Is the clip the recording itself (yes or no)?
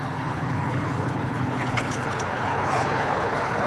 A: no